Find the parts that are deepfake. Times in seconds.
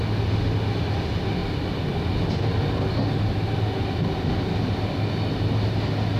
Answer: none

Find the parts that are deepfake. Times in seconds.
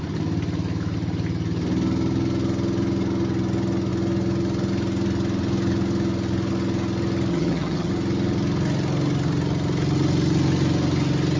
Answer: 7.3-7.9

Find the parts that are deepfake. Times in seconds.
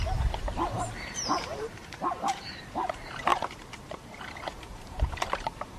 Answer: 0.0-5.8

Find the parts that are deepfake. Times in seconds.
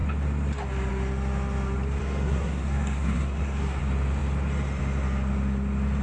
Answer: 2.0-3.8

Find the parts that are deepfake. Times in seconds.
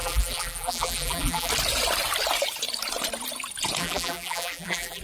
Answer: 0.0-1.5; 3.8-5.0